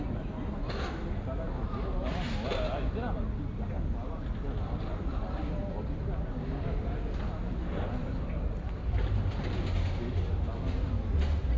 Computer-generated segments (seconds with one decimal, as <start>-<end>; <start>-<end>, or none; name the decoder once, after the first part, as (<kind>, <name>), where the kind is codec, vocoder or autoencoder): none